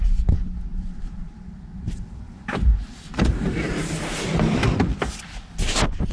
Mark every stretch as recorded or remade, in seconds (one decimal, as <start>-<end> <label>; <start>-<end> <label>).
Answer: 0.0-0.7 recorded; 0.7-3.9 remade; 3.9-6.1 recorded